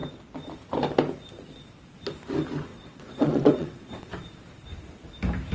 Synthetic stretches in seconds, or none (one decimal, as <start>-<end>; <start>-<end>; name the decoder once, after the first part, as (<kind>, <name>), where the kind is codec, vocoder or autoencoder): 2.7-4.1 (vocoder, WaveNeXt)